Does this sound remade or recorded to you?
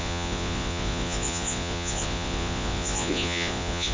remade